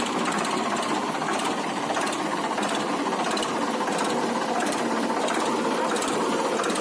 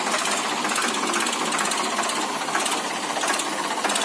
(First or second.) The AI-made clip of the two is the first